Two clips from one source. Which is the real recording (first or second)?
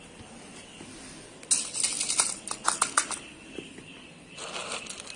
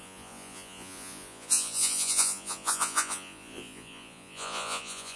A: first